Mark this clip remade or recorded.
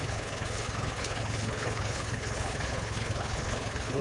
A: remade